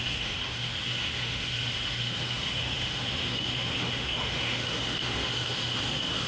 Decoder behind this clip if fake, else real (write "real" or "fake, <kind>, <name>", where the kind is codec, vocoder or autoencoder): fake, autoencoder, DAC-VAE